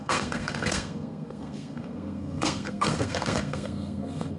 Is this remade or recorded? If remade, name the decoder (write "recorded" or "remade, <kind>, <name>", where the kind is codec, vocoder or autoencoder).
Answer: remade, codec, SNAC